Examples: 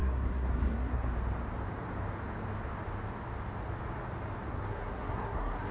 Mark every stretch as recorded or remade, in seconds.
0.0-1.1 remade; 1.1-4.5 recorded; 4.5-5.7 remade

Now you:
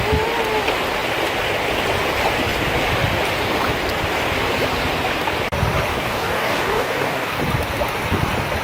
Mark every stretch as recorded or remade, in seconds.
0.0-5.9 recorded; 5.9-7.4 remade; 7.4-8.6 recorded

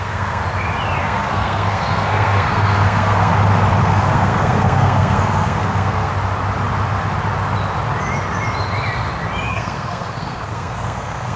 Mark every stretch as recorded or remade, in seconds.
0.0-0.4 remade; 0.4-1.0 recorded; 1.0-3.3 remade; 3.3-3.8 recorded; 3.8-6.1 remade; 6.1-9.5 recorded; 9.5-11.4 remade